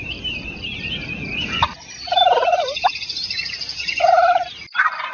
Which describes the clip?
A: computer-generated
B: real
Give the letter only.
A